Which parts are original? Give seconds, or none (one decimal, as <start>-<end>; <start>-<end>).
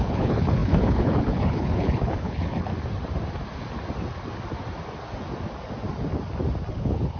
2.7-6.7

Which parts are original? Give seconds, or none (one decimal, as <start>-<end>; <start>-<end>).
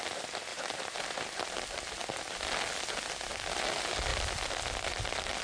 0.0-0.5; 1.5-5.4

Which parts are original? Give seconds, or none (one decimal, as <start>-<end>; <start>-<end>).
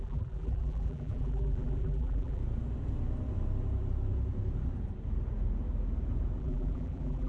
2.4-6.4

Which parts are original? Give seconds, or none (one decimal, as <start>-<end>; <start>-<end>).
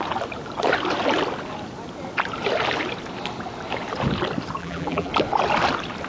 0.0-4.6; 5.1-6.1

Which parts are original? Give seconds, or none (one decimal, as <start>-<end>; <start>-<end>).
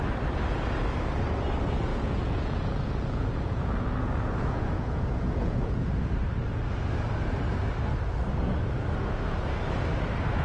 0.0-1.9; 5.9-10.4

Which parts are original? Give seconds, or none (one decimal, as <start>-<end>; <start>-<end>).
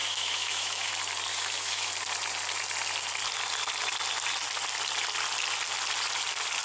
0.9-1.3; 1.9-6.6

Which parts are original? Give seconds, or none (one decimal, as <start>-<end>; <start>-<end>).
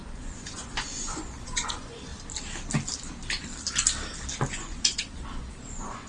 2.1-4.5